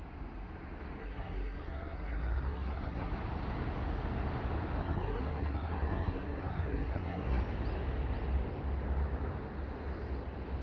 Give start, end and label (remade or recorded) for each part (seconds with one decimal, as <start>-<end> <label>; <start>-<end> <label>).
0.0-1.0 recorded; 1.0-3.1 remade; 3.1-4.8 recorded; 4.8-7.4 remade; 7.4-10.6 recorded